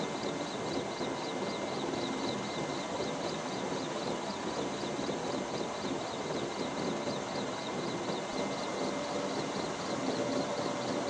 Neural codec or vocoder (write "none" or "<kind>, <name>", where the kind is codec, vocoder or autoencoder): none